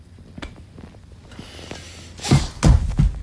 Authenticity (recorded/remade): recorded